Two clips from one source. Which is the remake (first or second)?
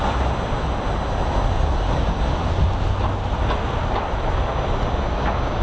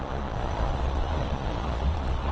second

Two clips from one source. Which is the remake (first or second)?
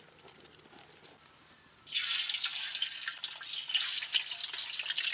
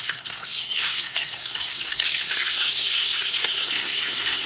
second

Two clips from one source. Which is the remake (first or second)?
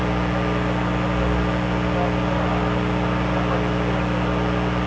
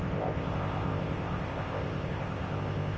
second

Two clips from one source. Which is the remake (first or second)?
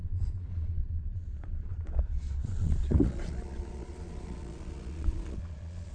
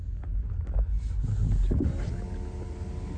first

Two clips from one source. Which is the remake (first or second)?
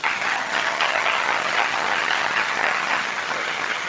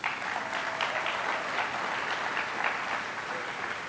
first